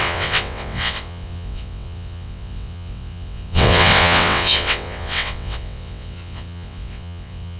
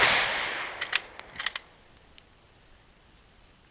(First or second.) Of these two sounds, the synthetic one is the first